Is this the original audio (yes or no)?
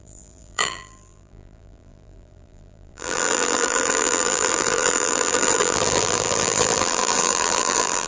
no